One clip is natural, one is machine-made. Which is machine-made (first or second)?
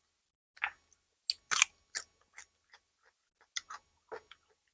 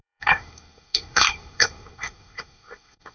second